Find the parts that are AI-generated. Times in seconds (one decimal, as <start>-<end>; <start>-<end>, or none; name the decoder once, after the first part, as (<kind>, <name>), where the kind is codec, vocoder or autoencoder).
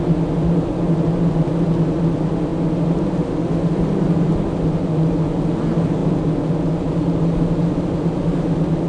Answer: none